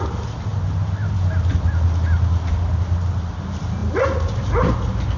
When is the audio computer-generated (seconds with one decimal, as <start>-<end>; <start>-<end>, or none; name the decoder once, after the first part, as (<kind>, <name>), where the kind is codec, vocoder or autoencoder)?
none